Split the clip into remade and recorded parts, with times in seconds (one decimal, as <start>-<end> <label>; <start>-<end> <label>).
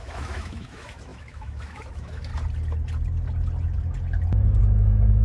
0.0-2.3 remade; 2.3-4.6 recorded; 4.6-5.2 remade